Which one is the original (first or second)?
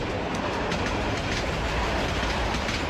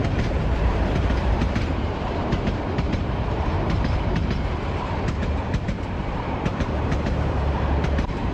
first